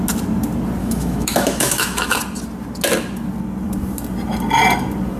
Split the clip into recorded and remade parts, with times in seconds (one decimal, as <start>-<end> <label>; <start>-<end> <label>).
0.0-0.8 recorded; 0.8-2.2 remade; 2.2-5.2 recorded